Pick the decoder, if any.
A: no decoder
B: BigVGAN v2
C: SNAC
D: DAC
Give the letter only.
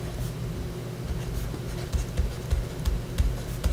A